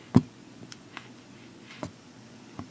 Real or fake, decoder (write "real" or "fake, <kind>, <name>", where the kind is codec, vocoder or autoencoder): fake, vocoder, Vocos